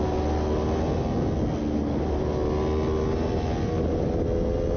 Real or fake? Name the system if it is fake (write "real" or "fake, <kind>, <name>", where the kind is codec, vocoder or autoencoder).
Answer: real